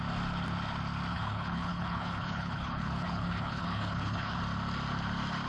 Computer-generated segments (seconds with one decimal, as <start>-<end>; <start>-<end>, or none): 1.1-4.4